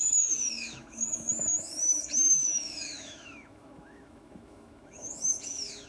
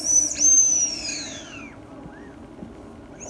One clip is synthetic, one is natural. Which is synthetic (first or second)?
first